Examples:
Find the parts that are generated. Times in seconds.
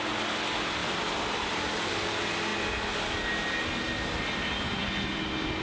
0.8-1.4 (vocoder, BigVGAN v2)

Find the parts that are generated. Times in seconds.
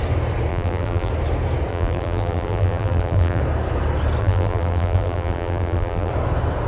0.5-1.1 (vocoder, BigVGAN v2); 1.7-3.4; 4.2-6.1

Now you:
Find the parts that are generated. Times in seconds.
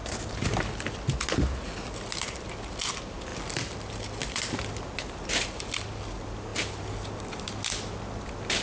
none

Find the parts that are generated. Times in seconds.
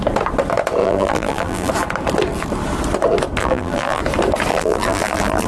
0.8-1.7 (vocoder, BigVGAN v2); 3.4-4.0; 4.5-5.5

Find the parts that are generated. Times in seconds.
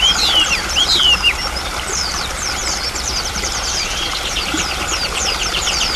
0.0-6.0 (vocoder, BigVGAN v2)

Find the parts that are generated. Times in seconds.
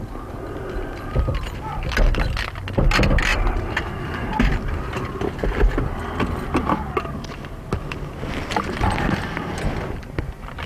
3.3-3.9 (vocoder, BigVGAN v2)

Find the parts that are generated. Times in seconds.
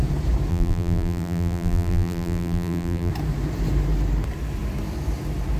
0.5-3.1 (vocoder, BigVGAN v2)